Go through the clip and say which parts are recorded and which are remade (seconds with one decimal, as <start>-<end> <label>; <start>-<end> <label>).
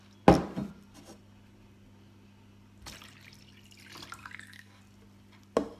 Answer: 0.0-4.2 recorded; 4.2-4.8 remade; 4.8-5.8 recorded